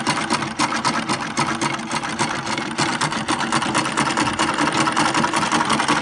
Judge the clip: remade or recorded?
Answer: recorded